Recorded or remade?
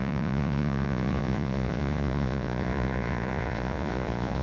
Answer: remade